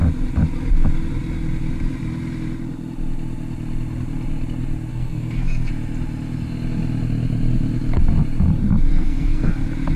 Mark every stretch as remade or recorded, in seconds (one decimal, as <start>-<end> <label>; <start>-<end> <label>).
0.0-4.9 recorded; 4.9-5.7 remade; 5.7-8.9 recorded; 8.9-9.5 remade; 9.5-10.0 recorded